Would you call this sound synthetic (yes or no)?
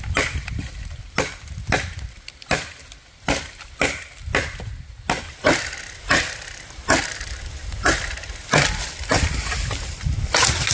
no